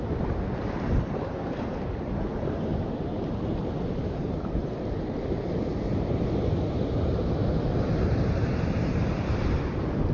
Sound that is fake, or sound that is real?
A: fake